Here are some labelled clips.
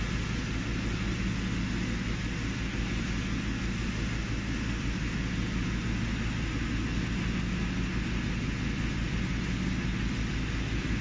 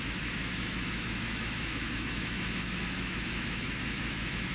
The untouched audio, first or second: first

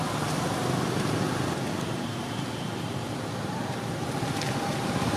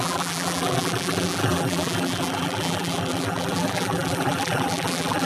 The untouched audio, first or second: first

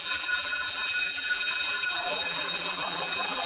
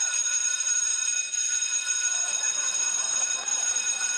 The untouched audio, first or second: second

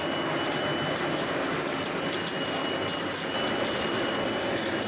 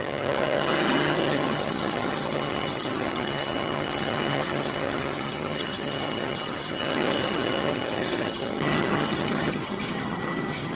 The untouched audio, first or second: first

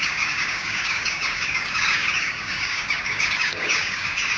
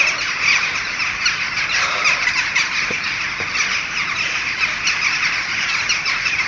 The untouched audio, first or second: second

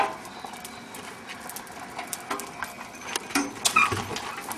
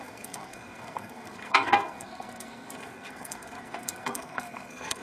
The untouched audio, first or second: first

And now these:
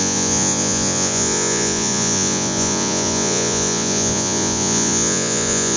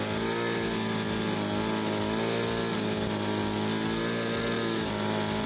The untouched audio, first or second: second